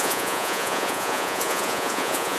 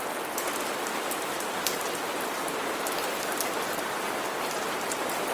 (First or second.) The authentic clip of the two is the second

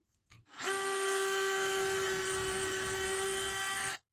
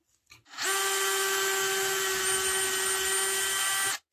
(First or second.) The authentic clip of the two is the second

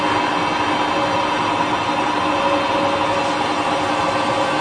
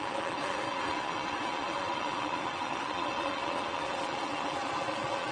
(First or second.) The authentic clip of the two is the first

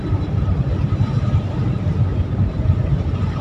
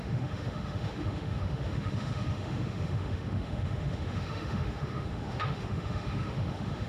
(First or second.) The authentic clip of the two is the first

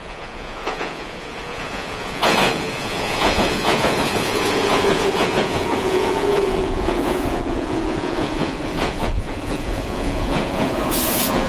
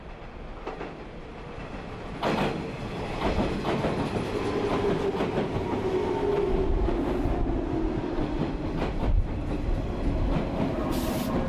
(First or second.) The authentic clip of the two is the second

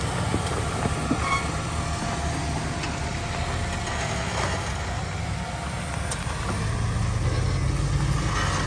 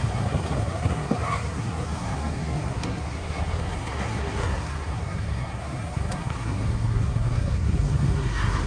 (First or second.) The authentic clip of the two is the first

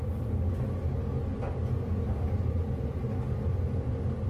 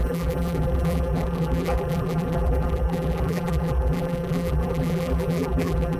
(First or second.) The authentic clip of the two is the first